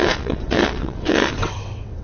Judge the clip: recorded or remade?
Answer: remade